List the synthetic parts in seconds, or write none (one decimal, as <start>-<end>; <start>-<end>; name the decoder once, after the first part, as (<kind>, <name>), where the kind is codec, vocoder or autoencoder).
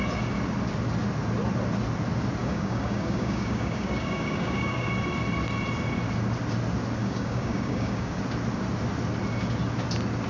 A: 2.4-4.9 (codec, DAC); 7.0-8.2